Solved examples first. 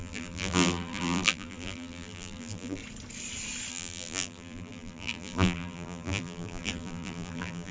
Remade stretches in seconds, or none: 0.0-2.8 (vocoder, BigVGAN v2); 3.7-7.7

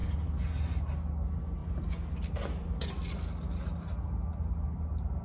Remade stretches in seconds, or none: none

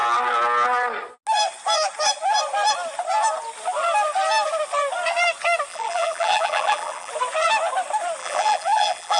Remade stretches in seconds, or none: 5.7-7.1 (vocoder, BigVGAN v2); 8.2-9.2

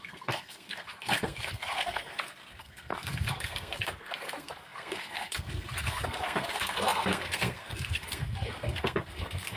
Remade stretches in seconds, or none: 0.0-9.6 (codec, SNAC)

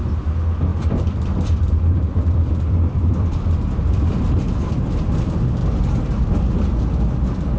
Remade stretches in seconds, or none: 0.7-5.1 (vocoder, BigVGAN v2)

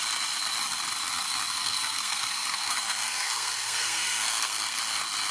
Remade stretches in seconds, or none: 1.6-4.8 (codec, SNAC)